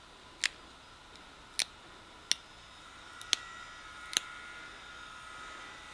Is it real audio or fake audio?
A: real